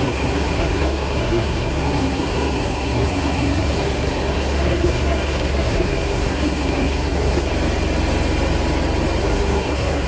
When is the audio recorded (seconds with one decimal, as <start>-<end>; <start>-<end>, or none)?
7.5-9.2